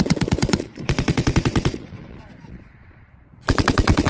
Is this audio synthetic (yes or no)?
yes